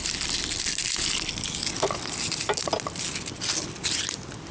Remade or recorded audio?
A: recorded